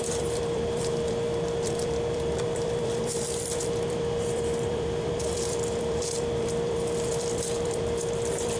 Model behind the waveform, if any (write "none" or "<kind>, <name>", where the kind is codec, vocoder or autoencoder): vocoder, BigVGAN v2